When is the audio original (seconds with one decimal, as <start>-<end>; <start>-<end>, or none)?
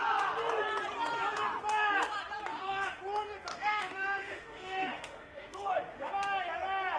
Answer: 0.0-2.5; 3.0-3.5; 6.1-7.0